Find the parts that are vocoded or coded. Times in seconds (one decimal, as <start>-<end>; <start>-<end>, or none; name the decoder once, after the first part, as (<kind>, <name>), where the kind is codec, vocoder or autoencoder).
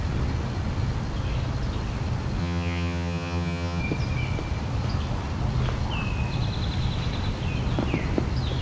2.4-3.8 (vocoder, HiFi-GAN)